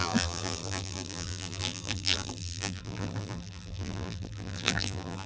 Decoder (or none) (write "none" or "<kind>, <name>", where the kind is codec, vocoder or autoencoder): vocoder, BigVGAN v2